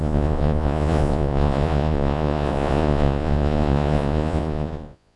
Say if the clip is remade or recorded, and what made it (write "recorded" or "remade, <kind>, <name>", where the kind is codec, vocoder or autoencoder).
remade, vocoder, Vocos